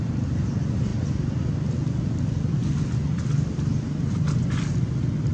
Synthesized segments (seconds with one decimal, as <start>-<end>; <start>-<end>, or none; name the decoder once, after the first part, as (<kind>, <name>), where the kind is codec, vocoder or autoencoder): none